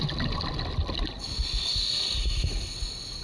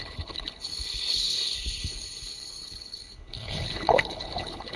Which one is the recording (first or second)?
first